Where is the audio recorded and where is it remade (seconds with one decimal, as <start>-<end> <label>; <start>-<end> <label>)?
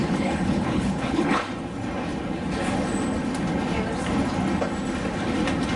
0.0-1.5 remade; 1.5-5.8 recorded